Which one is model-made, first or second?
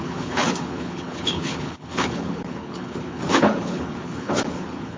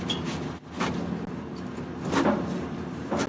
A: first